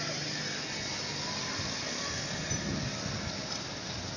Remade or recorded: recorded